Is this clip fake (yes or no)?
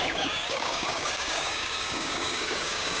yes